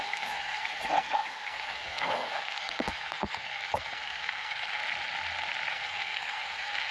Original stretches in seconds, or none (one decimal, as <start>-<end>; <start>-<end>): 4.8-5.7